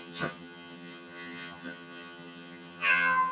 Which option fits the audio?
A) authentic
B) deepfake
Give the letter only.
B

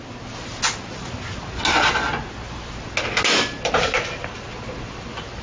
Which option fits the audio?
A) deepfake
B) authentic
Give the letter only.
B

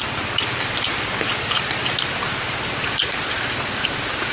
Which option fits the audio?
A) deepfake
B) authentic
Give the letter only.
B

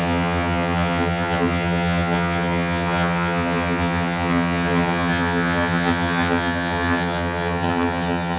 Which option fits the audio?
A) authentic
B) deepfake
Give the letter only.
B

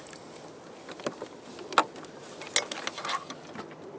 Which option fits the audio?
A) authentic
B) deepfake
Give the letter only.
A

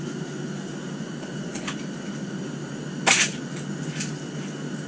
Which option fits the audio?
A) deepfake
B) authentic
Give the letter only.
B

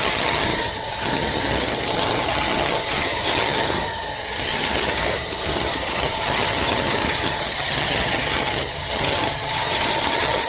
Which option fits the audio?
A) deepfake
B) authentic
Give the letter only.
A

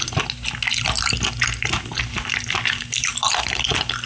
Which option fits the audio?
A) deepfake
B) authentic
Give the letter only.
B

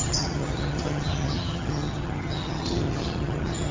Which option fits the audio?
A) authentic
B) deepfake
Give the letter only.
B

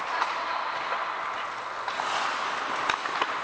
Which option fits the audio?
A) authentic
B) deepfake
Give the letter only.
A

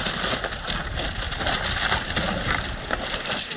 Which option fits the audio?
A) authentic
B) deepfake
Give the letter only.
A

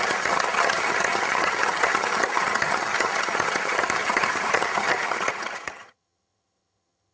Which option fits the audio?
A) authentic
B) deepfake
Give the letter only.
B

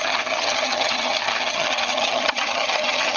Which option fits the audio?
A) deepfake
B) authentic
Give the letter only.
A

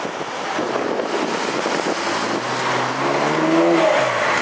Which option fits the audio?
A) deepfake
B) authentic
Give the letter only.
B